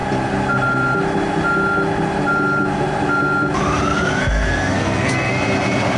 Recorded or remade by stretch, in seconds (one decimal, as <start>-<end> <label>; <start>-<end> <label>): 0.0-4.2 recorded; 4.2-5.3 remade; 5.3-6.0 recorded